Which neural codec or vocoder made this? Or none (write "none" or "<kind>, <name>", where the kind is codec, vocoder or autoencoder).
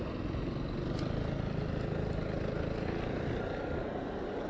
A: none